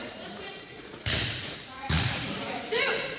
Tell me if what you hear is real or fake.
fake